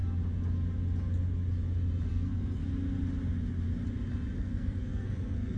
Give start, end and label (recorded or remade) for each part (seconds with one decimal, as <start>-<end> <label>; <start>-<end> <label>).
0.0-2.1 recorded; 2.1-2.6 remade; 2.6-4.4 recorded; 4.4-5.6 remade